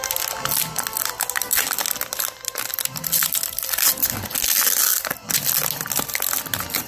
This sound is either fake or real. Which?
real